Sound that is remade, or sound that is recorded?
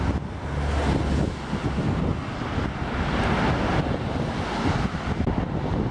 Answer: recorded